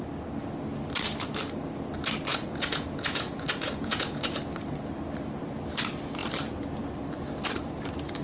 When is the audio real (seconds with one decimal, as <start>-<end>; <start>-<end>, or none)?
0.0-2.3; 4.4-8.2